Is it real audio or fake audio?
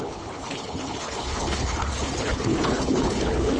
fake